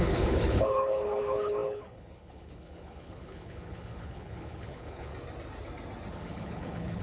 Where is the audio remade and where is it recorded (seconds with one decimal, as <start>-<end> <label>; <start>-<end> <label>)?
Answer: 0.0-5.1 remade; 5.1-6.1 recorded; 6.1-7.0 remade